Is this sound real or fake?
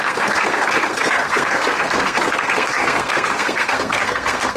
fake